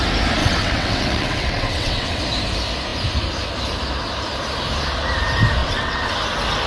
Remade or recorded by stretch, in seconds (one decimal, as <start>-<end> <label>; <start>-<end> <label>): 0.0-0.4 recorded; 0.4-2.2 remade; 2.2-5.6 recorded; 5.6-6.1 remade; 6.1-6.7 recorded